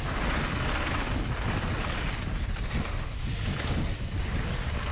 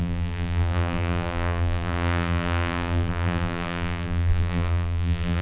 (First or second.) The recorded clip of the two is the first